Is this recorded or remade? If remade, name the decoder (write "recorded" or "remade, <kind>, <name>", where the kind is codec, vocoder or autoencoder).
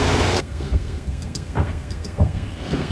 remade, codec, SNAC